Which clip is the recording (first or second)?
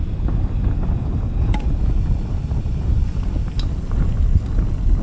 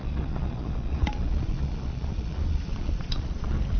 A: first